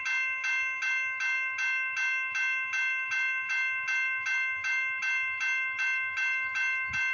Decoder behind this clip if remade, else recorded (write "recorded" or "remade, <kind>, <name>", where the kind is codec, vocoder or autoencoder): recorded